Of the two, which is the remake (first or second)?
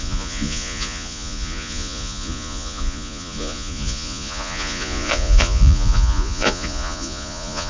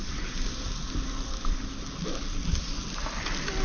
first